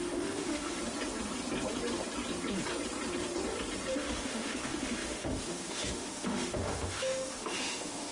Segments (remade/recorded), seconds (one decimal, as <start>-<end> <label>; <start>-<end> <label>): 0.0-0.8 remade; 0.8-3.9 recorded; 3.9-8.1 remade

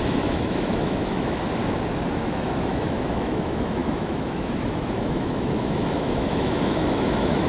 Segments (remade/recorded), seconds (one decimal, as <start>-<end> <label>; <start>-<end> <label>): 0.0-1.6 remade; 1.6-2.2 recorded; 2.2-7.5 remade

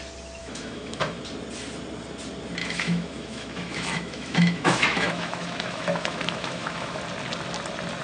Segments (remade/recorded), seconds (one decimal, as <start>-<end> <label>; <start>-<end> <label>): 0.0-0.4 recorded; 0.4-1.2 remade; 1.2-2.6 recorded; 2.6-7.0 remade; 7.0-8.0 recorded

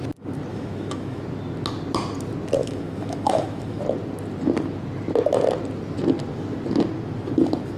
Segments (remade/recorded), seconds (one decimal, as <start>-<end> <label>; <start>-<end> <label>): 0.0-0.5 recorded; 0.5-1.2 remade; 1.2-2.6 recorded; 2.6-3.8 remade; 3.8-7.8 recorded

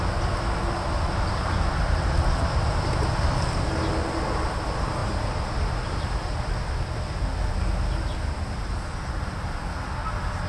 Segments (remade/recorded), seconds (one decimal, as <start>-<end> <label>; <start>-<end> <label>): 0.0-10.5 recorded